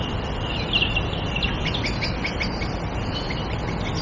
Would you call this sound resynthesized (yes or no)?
no